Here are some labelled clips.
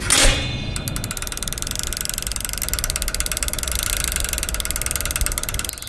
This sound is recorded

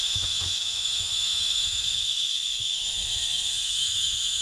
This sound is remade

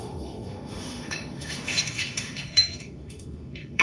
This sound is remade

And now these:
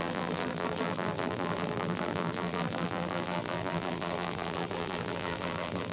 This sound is remade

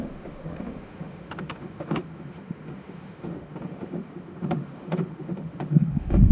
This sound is remade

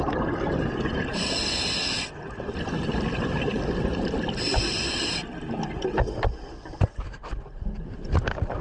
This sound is recorded